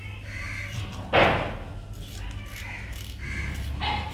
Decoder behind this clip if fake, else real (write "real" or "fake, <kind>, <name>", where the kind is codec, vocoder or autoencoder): real